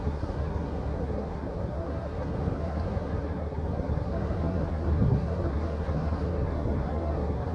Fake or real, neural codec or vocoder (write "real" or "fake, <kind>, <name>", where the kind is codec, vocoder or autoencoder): fake, codec, SNAC